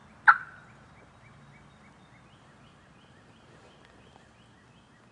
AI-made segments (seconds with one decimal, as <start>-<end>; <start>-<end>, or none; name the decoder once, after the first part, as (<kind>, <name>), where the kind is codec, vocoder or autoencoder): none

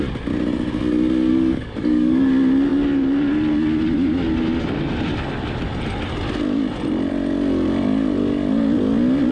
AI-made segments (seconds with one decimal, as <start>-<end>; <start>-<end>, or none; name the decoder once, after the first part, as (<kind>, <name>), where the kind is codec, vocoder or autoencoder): 1.3-2.3 (codec, DAC)

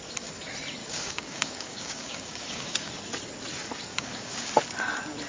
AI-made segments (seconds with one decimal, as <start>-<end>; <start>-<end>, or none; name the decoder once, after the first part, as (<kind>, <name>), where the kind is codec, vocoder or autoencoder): 0.8-2.9 (codec, DAC); 3.9-4.5

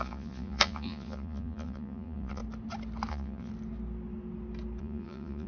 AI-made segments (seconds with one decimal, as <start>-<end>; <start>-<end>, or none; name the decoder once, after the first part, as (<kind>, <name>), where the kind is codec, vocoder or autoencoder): 0.0-2.4 (vocoder, Vocos); 3.1-3.5; 4.8-5.5

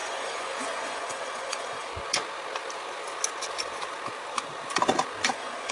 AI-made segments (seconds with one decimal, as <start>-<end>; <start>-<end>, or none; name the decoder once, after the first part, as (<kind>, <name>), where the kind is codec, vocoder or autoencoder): 0.0-1.9 (vocoder, Vocos); 5.3-5.7

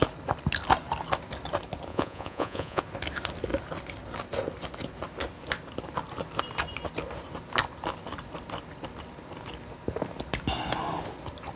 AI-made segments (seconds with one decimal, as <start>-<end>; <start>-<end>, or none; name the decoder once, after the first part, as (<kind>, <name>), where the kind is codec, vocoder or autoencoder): 1.9-2.8 (vocoder, Vocos)

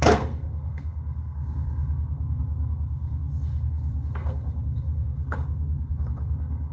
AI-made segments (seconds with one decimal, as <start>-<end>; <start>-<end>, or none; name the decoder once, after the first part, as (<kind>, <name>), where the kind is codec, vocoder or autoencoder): 0.0-6.7 (codec, SNAC)

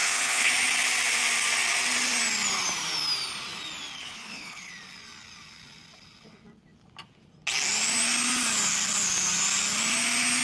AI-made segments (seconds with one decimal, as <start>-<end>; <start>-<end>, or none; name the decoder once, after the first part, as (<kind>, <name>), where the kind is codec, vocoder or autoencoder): 0.0-0.5 (codec, HILCodec); 4.0-4.7